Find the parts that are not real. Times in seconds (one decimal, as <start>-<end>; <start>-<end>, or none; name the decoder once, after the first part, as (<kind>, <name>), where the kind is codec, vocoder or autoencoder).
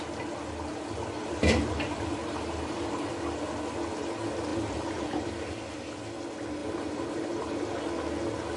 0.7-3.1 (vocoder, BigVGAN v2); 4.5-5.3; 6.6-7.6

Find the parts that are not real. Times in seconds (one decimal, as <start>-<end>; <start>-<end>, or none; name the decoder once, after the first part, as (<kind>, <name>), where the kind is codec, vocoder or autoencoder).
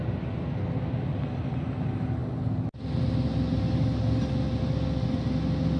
none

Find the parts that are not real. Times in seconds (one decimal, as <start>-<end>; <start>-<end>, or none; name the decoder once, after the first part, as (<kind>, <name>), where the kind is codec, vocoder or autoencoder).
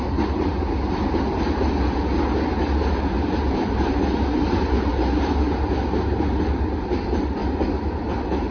0.0-0.5 (vocoder, BigVGAN v2); 2.9-7.4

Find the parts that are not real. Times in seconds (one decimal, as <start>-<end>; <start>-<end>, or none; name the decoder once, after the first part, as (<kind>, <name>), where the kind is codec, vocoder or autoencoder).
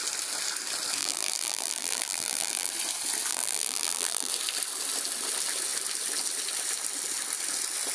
1.0-2.7 (vocoder, BigVGAN v2); 3.3-4.3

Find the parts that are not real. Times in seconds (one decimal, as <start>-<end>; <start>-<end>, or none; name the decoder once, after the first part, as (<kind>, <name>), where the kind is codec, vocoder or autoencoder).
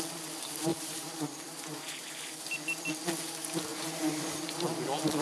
0.7-2.4 (vocoder, BigVGAN v2); 3.7-4.4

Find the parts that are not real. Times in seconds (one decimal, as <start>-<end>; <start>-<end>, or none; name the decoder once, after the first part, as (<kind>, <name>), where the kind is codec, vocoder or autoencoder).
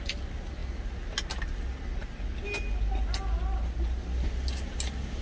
none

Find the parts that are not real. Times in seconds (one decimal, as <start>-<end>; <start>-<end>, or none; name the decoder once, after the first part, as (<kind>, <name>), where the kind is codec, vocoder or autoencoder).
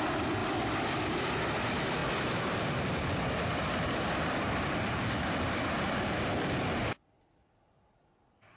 0.4-1.3 (vocoder, BigVGAN v2); 2.0-6.8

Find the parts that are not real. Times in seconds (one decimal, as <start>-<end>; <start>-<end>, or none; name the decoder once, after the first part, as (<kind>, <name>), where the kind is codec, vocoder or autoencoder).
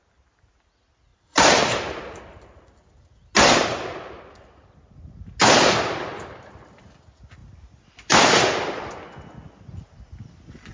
1.1-2.7 (vocoder, BigVGAN v2)